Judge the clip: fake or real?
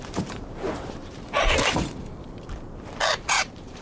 fake